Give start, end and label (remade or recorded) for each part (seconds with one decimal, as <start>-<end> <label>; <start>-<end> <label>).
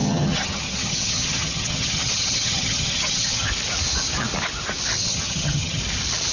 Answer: 0.0-3.5 remade; 3.5-5.0 recorded; 5.0-5.8 remade; 5.8-6.3 recorded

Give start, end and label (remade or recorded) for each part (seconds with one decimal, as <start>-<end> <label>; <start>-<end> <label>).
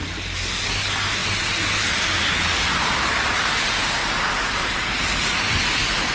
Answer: 0.0-6.1 recorded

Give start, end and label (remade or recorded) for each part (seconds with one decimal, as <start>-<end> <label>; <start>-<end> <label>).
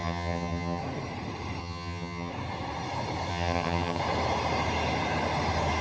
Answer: 0.0-0.8 remade; 0.8-1.6 recorded; 1.6-2.3 remade; 2.3-3.3 recorded; 3.3-4.0 remade; 4.0-5.8 recorded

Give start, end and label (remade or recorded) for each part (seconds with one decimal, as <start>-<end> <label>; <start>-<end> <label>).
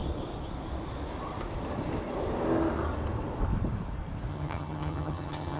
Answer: 0.0-4.3 recorded; 4.3-5.6 remade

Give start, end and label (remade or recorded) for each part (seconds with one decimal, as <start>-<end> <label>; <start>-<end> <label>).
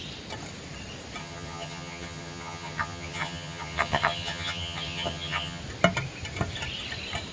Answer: 0.0-1.2 recorded; 1.2-5.6 remade; 5.6-7.3 recorded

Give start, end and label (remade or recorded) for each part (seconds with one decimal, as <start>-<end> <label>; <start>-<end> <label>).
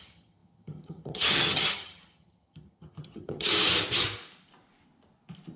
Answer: 0.0-3.5 remade; 3.5-5.6 recorded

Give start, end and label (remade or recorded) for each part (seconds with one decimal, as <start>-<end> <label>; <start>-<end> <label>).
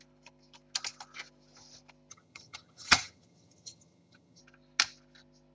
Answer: 0.0-2.1 recorded; 2.1-4.4 remade; 4.4-5.5 recorded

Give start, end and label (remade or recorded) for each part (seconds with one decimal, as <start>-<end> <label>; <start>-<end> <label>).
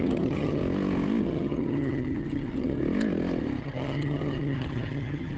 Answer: 0.0-0.6 remade; 0.6-1.2 recorded; 1.2-2.8 remade; 2.8-3.6 recorded; 3.6-5.4 remade